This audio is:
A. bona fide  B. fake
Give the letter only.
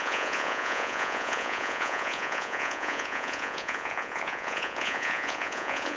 B